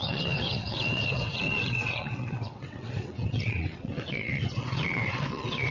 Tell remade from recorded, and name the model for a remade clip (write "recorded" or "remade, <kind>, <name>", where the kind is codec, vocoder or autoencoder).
remade, vocoder, WaveNeXt